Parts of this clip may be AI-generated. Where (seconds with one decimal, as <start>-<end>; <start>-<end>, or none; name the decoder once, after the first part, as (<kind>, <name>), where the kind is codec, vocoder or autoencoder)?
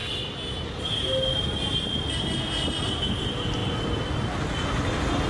0.0-0.5 (vocoder, BigVGAN v2)